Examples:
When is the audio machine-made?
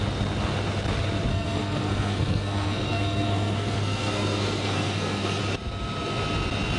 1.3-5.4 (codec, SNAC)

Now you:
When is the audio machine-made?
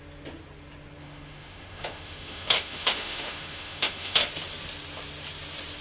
1.0-4.2 (autoencoder, DAC-VAE)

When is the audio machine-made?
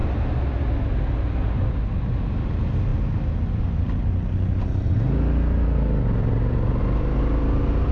none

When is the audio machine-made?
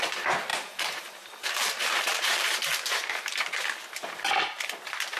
0.5-3.6 (vocoder, BigVGAN v2)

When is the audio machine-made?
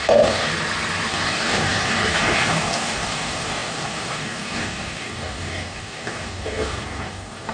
0.0-0.5 (codec, DAC); 1.1-7.5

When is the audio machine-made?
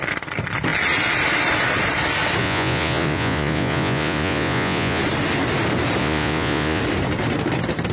2.4-5.0 (vocoder, Vocos); 6.0-6.8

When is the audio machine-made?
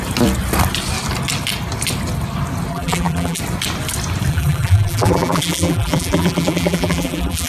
2.7-3.4 (vocoder, BigVGAN v2); 4.3-7.5